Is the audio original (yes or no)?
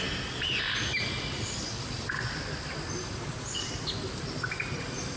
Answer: yes